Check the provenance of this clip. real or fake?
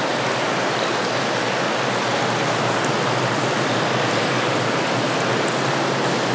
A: real